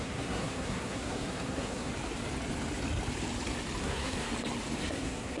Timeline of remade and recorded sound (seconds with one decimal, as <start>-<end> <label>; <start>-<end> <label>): 0.0-1.9 remade; 1.9-3.8 recorded; 3.8-4.3 remade; 4.3-4.8 recorded; 4.8-5.4 remade